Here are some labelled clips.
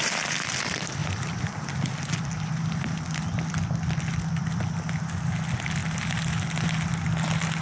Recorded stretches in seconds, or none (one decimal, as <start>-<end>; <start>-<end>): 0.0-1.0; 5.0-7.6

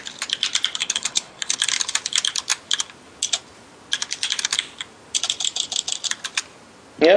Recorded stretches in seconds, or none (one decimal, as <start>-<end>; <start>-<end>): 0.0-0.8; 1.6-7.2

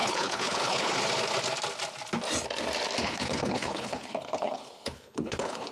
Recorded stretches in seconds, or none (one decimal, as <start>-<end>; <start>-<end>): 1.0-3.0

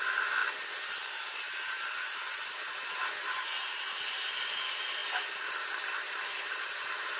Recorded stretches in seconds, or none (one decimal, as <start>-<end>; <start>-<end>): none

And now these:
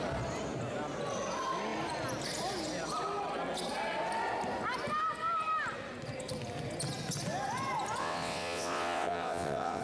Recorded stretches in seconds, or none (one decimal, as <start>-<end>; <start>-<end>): 0.0-8.0

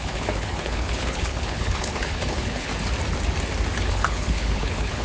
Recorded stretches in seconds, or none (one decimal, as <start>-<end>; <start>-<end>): 2.7-3.8